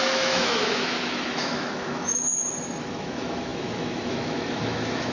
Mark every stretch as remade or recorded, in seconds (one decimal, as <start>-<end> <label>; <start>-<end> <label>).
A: 0.0-2.2 remade; 2.2-2.8 recorded; 2.8-5.1 remade